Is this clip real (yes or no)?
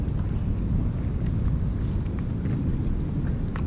yes